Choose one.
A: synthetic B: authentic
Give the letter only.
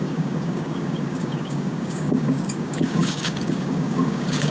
A